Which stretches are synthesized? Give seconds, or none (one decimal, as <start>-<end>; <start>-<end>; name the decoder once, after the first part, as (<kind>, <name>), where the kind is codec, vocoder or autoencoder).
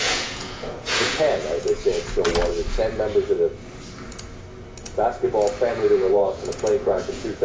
0.0-1.9 (vocoder, Vocos); 5.7-7.4